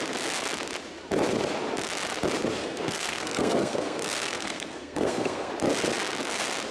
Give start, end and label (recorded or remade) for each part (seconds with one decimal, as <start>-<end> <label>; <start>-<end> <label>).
0.0-2.6 recorded; 2.6-5.5 remade; 5.5-6.7 recorded